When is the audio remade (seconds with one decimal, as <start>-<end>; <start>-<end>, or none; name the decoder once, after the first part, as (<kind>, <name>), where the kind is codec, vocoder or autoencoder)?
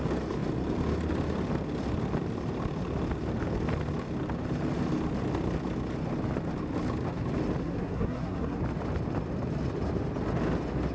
7.6-8.6 (codec, SNAC)